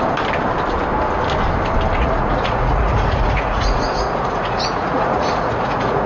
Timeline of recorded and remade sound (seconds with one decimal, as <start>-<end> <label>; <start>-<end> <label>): 0.0-2.0 recorded; 2.0-6.1 remade